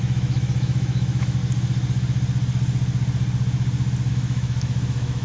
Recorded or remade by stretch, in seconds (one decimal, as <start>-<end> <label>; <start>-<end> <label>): 0.0-1.4 remade; 1.4-4.1 recorded; 4.1-5.2 remade